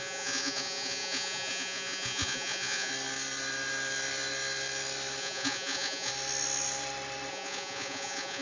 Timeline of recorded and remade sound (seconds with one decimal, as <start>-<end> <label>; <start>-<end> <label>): 0.0-2.9 remade; 2.9-5.2 recorded; 5.2-6.1 remade; 6.1-7.3 recorded; 7.3-8.4 remade